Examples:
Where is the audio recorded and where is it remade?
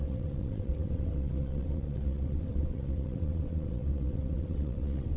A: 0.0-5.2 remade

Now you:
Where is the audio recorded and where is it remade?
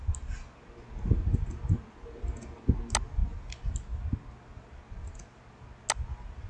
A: 0.0-6.5 recorded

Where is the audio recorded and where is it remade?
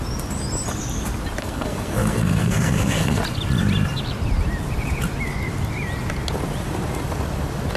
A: 0.0-1.4 recorded; 1.4-3.2 remade; 3.2-7.8 recorded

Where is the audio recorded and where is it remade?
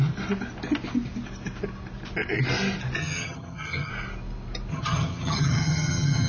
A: 0.0-3.0 recorded; 3.0-3.9 remade; 3.9-4.7 recorded; 4.7-6.3 remade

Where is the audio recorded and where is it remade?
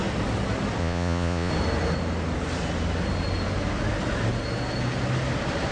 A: 0.0-0.8 recorded; 0.8-1.5 remade; 1.5-5.7 recorded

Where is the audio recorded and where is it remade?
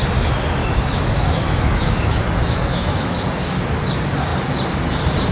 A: 0.0-0.6 recorded; 0.6-3.2 remade; 3.2-5.3 recorded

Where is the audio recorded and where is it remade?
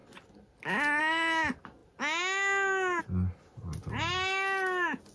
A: 0.0-5.1 recorded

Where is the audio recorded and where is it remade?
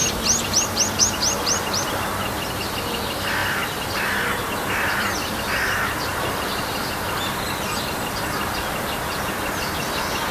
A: 0.0-3.4 recorded; 3.4-3.9 remade; 3.9-6.1 recorded; 6.1-6.7 remade; 6.7-10.3 recorded